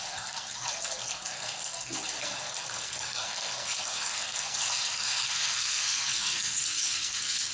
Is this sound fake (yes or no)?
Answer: yes